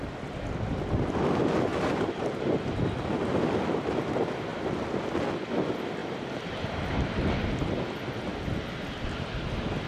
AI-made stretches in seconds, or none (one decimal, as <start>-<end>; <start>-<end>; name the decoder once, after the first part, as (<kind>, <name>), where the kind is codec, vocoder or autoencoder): 1.7-2.6 (vocoder, BigVGAN v2); 6.0-7.7